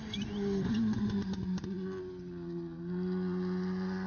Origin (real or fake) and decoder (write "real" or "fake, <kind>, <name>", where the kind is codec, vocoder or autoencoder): real